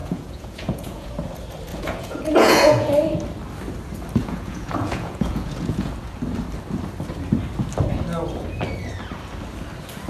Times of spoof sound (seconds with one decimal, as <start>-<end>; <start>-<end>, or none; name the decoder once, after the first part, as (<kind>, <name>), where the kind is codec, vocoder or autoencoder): 0.0-1.1 (vocoder, Vocos); 1.7-2.9; 4.2-5.9